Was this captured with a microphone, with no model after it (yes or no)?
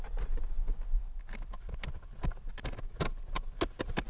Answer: yes